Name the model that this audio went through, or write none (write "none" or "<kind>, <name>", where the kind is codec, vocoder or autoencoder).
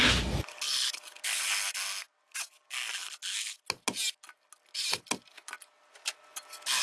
none